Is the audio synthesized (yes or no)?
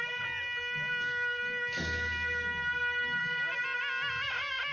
no